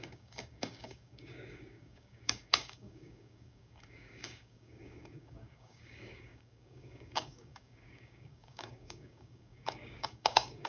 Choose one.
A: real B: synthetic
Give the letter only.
B